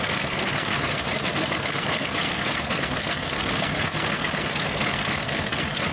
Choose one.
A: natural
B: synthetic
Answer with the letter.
B